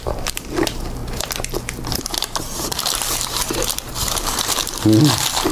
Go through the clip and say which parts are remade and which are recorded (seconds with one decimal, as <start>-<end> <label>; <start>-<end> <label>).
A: 0.0-1.0 remade; 1.0-2.4 recorded; 2.4-5.5 remade